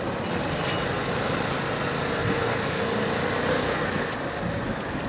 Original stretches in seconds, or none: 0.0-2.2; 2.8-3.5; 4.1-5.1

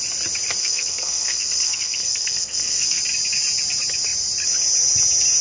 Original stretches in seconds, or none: 0.0-0.6; 3.0-5.4

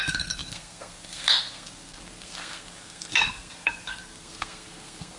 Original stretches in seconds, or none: none

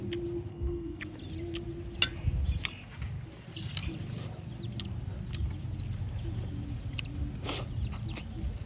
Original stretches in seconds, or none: 0.0-0.5; 1.0-8.7

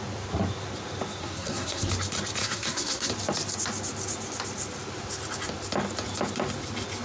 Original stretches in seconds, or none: 0.0-1.2; 1.9-2.4; 3.1-7.0